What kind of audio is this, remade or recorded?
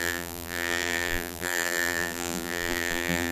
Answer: remade